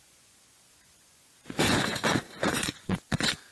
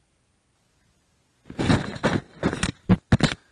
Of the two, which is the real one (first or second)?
second